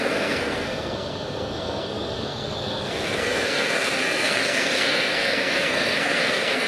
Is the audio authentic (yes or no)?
no